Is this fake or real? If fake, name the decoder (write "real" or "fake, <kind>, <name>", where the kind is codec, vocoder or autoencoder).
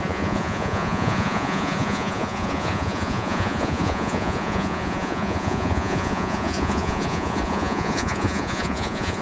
fake, vocoder, Vocos